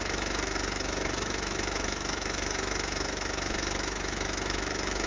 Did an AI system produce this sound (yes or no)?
yes